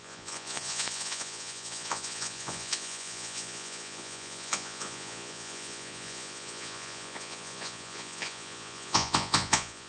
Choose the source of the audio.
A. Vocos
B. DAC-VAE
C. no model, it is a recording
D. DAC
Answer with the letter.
A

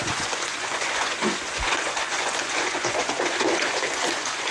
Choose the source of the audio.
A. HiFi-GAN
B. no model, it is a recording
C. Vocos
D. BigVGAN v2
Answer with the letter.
C